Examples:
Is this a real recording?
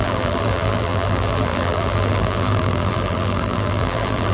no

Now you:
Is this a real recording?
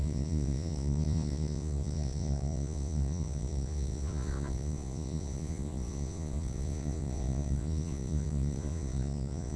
no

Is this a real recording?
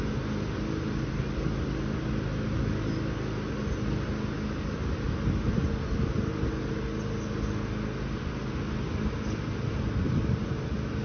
yes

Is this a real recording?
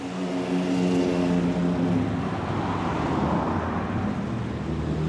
yes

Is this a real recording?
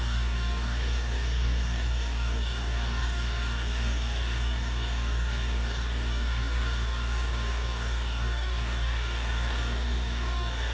no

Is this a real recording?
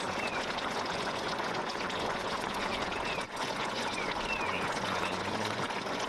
no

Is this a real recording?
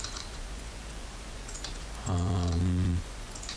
no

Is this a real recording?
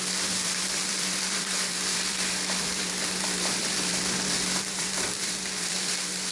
no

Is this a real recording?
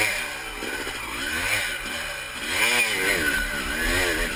yes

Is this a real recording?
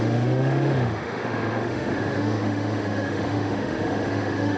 no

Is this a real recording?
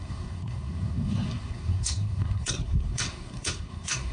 no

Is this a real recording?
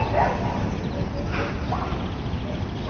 yes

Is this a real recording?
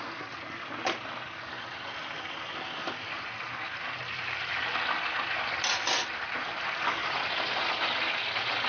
yes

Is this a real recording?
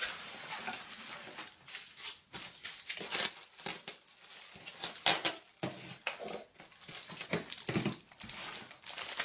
yes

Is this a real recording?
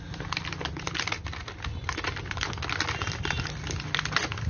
yes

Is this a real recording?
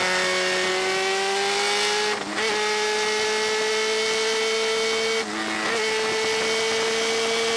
yes